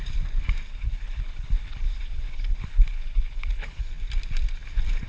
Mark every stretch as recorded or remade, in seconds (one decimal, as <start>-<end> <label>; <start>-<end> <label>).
0.0-0.7 recorded; 0.7-3.8 remade; 3.8-5.1 recorded